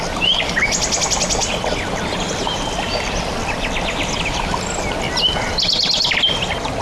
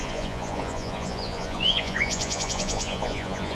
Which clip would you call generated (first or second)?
second